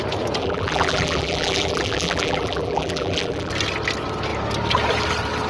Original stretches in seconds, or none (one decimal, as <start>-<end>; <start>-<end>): 0.0-0.4; 3.5-5.5